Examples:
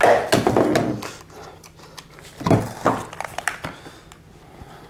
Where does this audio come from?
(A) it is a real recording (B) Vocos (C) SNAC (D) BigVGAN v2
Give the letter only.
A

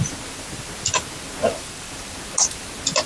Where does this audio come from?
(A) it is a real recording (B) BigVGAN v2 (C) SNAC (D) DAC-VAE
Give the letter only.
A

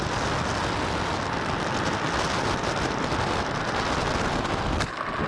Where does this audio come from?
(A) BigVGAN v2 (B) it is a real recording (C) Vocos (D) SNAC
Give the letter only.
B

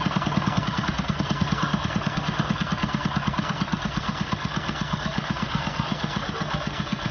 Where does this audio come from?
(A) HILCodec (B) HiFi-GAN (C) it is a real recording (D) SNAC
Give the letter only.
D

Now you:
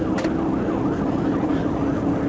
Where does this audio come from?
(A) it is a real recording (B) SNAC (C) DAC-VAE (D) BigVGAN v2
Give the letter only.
A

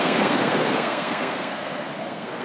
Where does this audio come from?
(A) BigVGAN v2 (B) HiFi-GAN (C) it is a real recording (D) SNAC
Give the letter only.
D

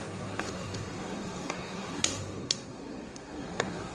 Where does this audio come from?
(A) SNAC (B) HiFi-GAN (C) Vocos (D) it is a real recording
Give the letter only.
A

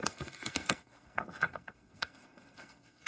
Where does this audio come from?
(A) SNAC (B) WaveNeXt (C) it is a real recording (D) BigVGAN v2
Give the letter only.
A